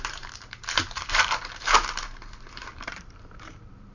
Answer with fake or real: fake